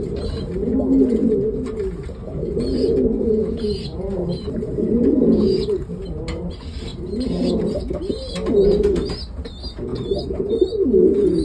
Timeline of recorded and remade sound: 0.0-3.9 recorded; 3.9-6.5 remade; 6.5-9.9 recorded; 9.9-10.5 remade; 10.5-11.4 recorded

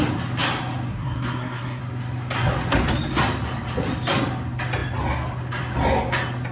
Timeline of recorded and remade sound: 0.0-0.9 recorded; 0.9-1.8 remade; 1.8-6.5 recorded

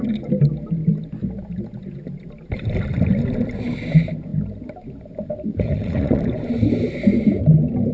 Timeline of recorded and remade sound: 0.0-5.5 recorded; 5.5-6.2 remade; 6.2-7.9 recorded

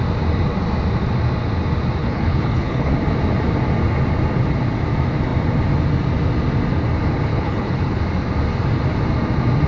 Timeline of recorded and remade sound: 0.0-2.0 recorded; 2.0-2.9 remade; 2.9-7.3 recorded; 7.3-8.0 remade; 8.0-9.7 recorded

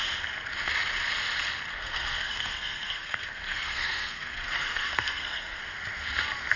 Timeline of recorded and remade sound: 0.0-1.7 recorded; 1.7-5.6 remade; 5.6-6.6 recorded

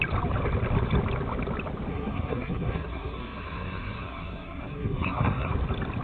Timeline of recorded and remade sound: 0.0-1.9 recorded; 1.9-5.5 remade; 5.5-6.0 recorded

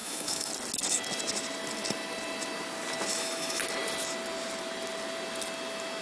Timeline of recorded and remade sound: 0.0-0.5 remade; 0.5-3.1 recorded; 3.1-3.6 remade; 3.6-6.0 recorded

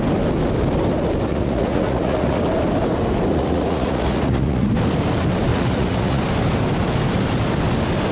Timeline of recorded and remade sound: 0.0-1.3 recorded; 1.3-2.4 remade; 2.4-3.3 recorded; 3.3-4.7 remade; 4.7-5.5 recorded; 5.5-6.2 remade; 6.2-8.1 recorded